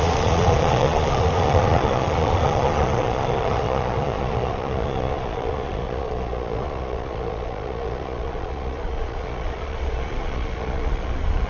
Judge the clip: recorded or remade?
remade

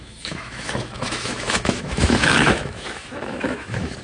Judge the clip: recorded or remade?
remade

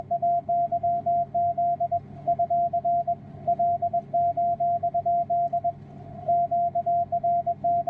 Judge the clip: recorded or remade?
recorded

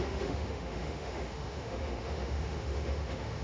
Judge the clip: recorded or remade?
remade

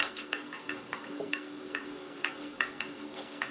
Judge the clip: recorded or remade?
remade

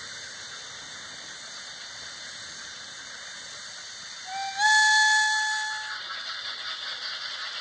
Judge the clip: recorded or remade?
recorded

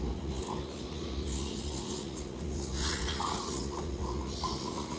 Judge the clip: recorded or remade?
remade